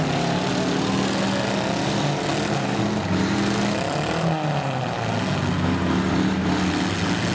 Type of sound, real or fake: real